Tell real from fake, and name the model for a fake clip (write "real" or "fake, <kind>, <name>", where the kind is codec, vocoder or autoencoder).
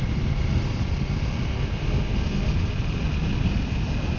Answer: real